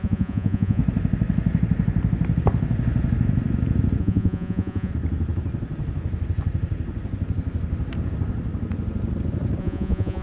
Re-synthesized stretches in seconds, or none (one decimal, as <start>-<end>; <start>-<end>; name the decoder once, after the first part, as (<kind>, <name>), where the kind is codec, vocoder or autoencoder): 0.0-0.8 (vocoder, Vocos); 4.0-4.9; 9.6-10.2